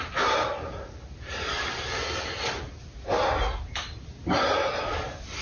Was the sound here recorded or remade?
recorded